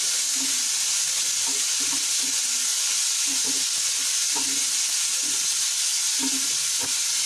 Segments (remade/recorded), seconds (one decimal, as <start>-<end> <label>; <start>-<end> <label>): 0.0-7.3 recorded